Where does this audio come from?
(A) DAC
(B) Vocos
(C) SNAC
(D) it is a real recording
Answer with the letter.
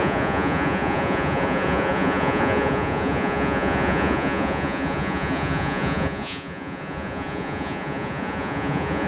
B